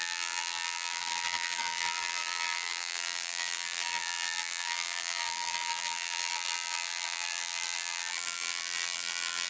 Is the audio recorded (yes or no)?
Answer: no